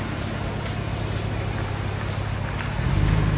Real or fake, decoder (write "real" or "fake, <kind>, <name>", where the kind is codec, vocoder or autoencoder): real